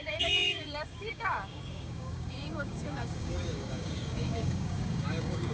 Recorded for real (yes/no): no